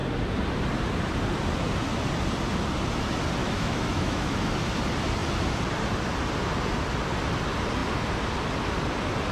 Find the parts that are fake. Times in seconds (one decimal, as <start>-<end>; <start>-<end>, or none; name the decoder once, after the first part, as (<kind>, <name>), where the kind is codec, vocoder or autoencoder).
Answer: 3.4-4.5 (autoencoder, DAC-VAE)